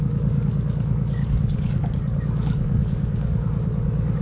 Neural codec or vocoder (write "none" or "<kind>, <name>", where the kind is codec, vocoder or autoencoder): codec, DAC